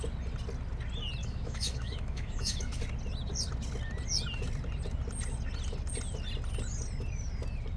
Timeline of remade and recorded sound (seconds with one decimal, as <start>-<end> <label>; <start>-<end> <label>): 0.0-1.2 recorded; 1.2-2.8 remade; 2.8-7.8 recorded